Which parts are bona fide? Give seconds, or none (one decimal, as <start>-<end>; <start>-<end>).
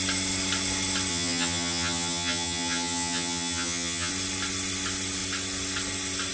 0.0-1.1; 4.1-6.3